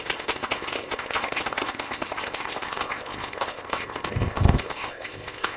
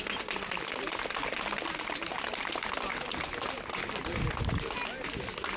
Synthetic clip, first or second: first